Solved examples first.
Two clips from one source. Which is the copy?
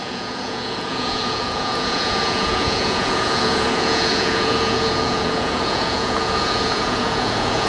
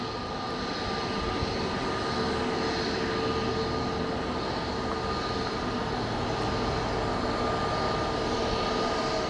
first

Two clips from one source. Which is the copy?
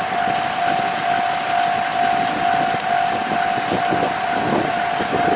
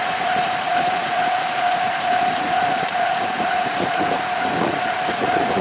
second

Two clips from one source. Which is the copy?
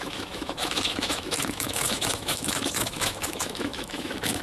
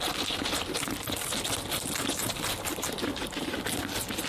first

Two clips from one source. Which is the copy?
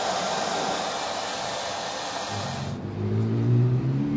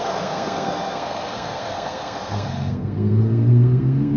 second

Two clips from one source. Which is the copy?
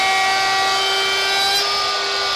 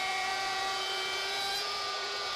second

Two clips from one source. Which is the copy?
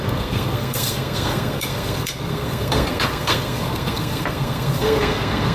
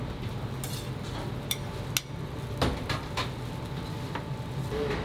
first